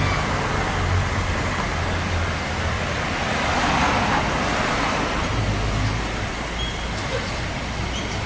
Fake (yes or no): no